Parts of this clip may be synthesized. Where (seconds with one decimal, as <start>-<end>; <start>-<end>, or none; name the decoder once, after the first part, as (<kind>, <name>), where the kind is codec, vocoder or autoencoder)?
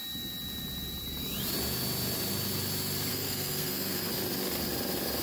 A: 3.1-4.1 (codec, SNAC)